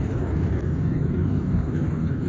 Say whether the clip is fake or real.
fake